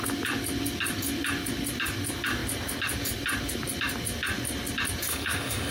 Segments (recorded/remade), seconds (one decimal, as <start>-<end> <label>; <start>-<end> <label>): 0.0-5.1 recorded; 5.1-5.7 remade